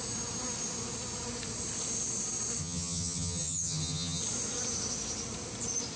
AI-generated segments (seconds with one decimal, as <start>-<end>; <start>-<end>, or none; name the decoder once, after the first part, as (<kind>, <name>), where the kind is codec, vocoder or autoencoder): 2.6-4.2 (vocoder, HiFi-GAN)